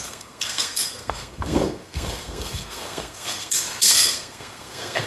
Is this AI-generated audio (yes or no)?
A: yes